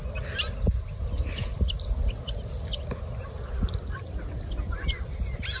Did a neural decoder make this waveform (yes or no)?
no